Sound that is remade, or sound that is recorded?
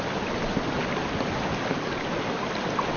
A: recorded